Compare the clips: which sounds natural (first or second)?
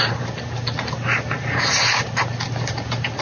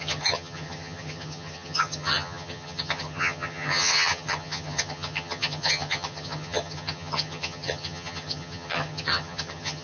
first